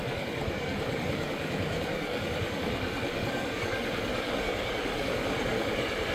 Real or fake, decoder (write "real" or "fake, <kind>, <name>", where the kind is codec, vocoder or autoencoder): fake, codec, DAC